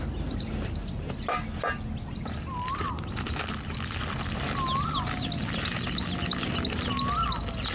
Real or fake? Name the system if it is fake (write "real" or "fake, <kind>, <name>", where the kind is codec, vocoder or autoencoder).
real